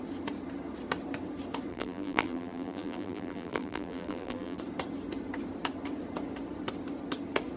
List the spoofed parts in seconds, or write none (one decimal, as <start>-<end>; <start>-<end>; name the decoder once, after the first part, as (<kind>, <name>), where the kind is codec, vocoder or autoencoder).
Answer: 1.7-4.6 (vocoder, BigVGAN v2)